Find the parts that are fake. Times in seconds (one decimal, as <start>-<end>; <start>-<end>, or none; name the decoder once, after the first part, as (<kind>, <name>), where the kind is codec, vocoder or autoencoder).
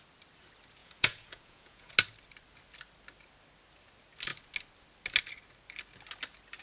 0.8-1.9 (vocoder, Vocos)